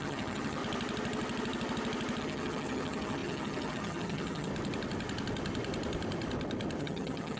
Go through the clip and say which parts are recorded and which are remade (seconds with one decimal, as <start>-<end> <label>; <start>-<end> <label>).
0.0-0.6 remade; 0.6-2.2 recorded; 2.2-4.5 remade; 4.5-6.8 recorded; 6.8-7.4 remade